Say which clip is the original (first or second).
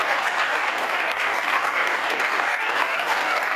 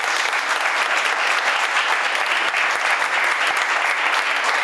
second